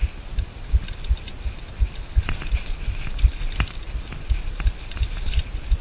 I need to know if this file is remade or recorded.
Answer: recorded